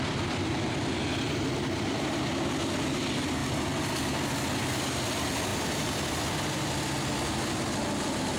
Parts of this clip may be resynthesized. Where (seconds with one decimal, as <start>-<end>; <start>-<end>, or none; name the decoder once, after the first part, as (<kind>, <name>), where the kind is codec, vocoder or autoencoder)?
5.5-6.8 (vocoder, BigVGAN v2)